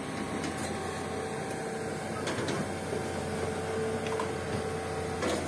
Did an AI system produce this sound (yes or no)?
no